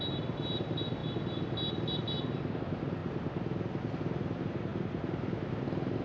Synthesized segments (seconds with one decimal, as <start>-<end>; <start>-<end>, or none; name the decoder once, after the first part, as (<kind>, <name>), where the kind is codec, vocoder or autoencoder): none